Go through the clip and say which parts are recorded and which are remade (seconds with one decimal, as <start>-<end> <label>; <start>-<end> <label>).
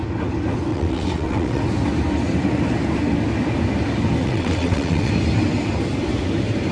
0.0-0.7 recorded; 0.7-1.6 remade; 1.6-4.2 recorded; 4.2-5.1 remade; 5.1-6.7 recorded